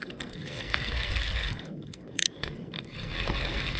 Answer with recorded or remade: remade